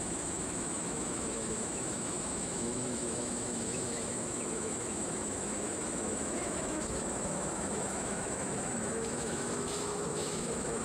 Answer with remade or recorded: remade